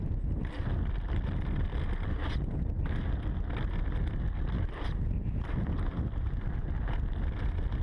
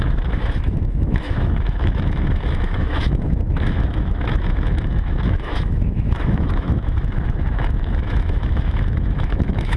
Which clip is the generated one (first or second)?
second